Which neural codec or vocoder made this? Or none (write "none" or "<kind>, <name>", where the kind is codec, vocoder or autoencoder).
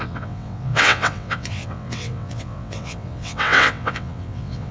vocoder, WaveNeXt